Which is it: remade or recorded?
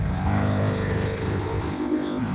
remade